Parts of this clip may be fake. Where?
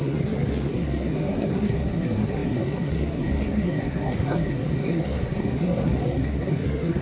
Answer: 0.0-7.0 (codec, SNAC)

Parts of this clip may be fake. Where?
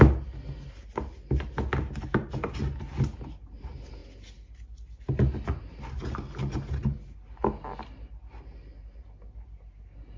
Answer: none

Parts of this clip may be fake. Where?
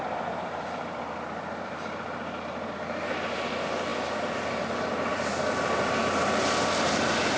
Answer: 0.0-7.4 (vocoder, BigVGAN v2)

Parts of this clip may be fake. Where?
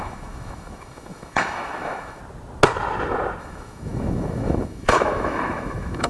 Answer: 0.0-2.2 (autoencoder, DAC-VAE); 3.4-6.1